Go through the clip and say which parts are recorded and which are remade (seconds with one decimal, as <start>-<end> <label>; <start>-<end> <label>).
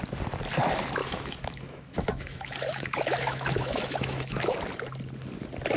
0.0-1.0 recorded; 1.0-4.5 remade; 4.5-5.8 recorded